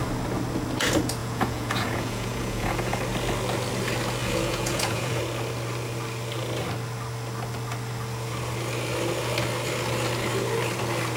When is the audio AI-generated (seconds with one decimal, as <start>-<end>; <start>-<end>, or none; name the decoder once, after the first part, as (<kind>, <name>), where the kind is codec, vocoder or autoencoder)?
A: 1.2-3.0 (vocoder, Vocos); 4.2-5.2